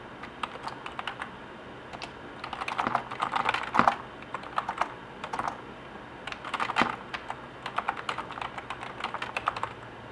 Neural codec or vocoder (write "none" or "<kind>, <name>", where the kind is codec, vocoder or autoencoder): none